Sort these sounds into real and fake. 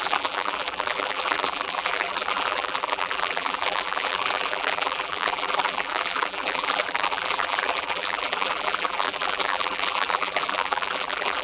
fake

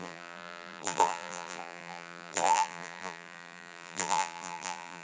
fake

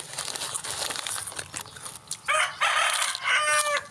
real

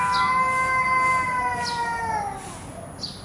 real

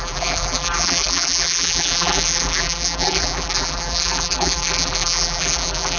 fake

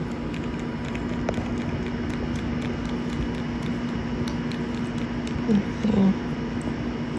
real